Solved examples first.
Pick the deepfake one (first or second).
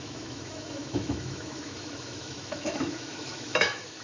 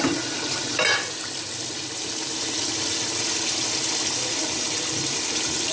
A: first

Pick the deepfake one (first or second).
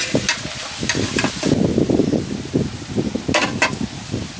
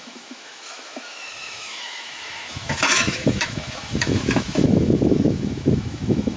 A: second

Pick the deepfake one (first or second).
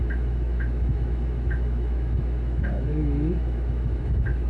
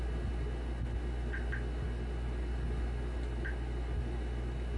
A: first